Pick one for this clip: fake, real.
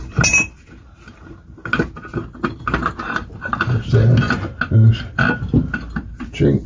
real